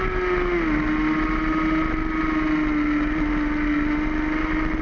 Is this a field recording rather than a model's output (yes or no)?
yes